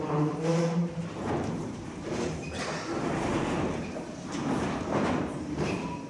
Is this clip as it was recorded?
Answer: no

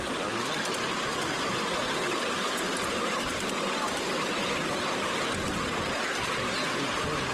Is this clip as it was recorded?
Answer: yes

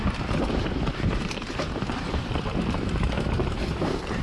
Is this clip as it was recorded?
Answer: no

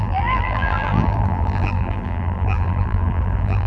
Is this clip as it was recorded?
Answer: no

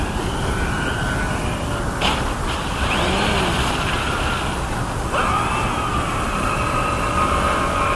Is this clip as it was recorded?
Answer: yes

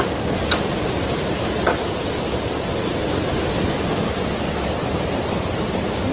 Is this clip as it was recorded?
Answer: yes